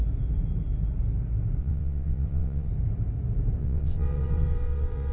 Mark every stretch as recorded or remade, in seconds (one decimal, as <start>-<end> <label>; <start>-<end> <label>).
0.0-1.6 recorded; 1.6-2.7 remade; 2.7-3.6 recorded; 3.6-5.1 remade